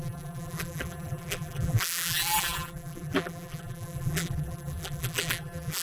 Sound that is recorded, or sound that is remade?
remade